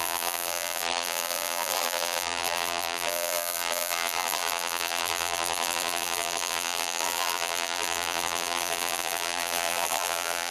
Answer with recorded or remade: remade